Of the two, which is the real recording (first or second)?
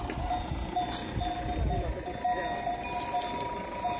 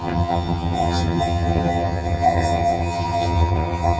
first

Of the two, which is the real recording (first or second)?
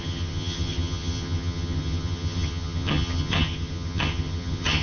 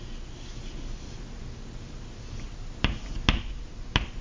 second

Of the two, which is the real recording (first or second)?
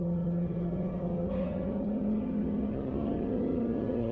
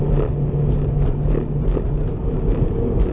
second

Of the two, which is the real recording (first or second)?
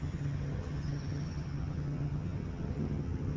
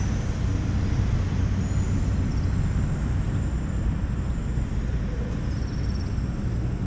second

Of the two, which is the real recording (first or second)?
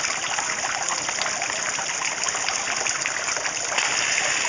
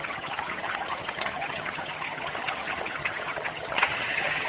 first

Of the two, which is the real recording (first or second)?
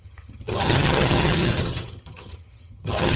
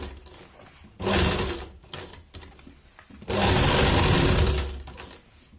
second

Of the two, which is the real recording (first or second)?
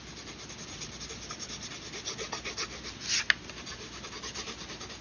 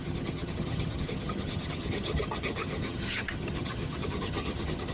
first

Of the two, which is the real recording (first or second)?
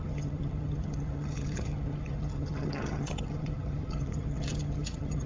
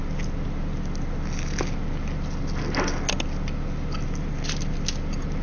second